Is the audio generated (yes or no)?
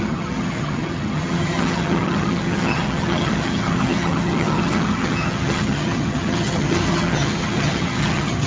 yes